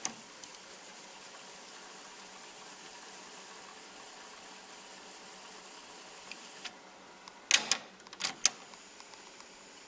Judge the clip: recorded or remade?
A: recorded